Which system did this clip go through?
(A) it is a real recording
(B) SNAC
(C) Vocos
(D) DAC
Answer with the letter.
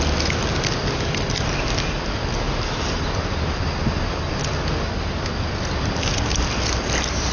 A